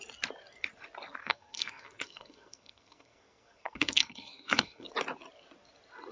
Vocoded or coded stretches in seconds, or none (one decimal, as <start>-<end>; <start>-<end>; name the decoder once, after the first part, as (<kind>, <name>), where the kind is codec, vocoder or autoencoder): 1.2-4.9 (codec, SNAC)